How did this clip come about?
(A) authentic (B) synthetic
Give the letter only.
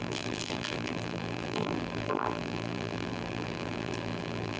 B